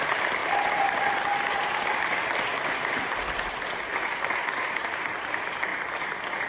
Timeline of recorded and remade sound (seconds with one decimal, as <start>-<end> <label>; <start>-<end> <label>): 0.0-6.5 recorded